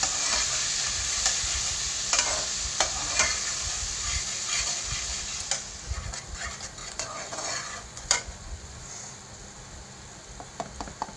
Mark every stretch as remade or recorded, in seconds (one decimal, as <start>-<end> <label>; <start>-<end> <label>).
0.0-6.8 recorded; 6.8-8.9 remade; 8.9-11.2 recorded